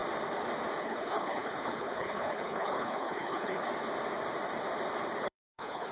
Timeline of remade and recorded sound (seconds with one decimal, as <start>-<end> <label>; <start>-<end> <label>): 0.0-0.8 recorded; 0.8-3.7 remade; 3.7-5.2 recorded; 5.2-5.9 remade